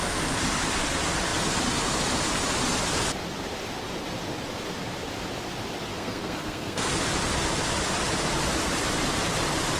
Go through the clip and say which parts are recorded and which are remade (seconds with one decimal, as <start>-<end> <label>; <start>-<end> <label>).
0.0-5.9 recorded; 5.9-6.9 remade; 6.9-9.8 recorded